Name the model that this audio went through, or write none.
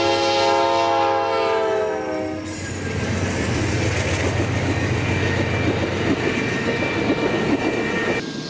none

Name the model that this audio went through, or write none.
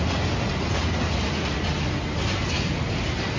none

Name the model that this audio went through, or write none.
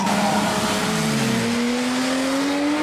none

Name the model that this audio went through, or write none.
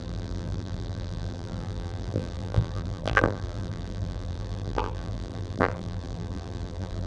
vocoder, BigVGAN v2